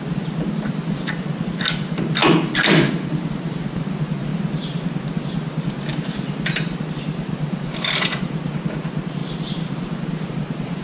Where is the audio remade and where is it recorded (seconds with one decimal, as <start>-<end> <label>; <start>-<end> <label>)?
0.0-2.2 remade; 2.2-2.9 recorded; 2.9-4.3 remade; 4.3-7.0 recorded; 7.0-10.8 remade